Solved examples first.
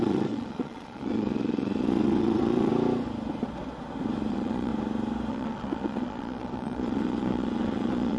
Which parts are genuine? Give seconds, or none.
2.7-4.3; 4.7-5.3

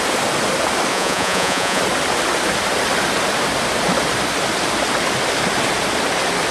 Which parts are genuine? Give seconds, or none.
0.0-0.9; 1.8-6.5

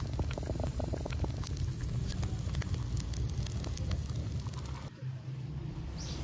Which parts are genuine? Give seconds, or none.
0.0-6.2

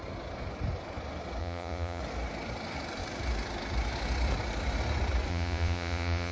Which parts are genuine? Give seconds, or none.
0.0-1.4; 2.0-5.3

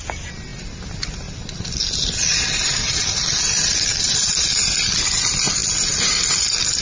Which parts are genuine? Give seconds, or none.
0.0-6.8

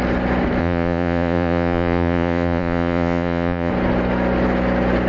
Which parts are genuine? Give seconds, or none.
0.0-0.6; 3.7-5.1

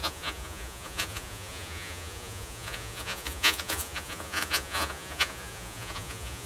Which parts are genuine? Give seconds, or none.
none